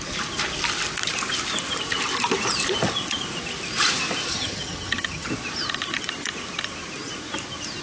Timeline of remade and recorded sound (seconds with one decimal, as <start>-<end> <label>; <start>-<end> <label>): 0.0-4.3 recorded; 4.3-5.3 remade; 5.3-7.8 recorded